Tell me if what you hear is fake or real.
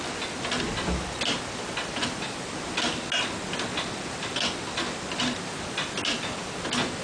real